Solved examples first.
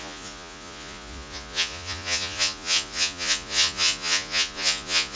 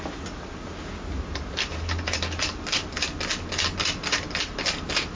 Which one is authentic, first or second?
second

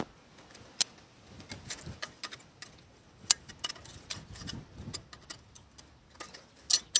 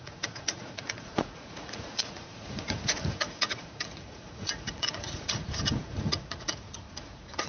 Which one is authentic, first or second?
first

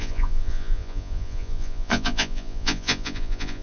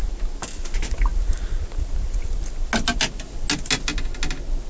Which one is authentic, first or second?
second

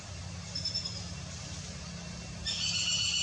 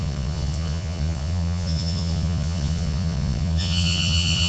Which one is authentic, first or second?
first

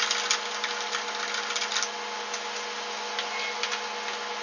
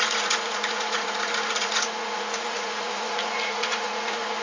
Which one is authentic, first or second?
first